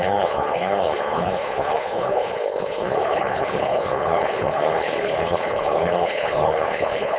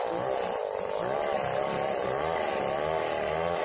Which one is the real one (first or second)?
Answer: second